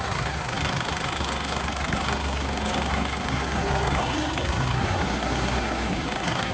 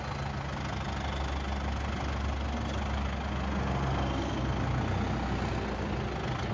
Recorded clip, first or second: second